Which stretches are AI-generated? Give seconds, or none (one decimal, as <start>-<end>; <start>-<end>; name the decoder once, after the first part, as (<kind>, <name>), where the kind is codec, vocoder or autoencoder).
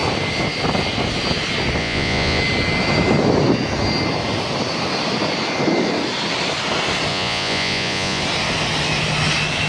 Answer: 1.8-2.4 (vocoder, Vocos); 7.1-8.2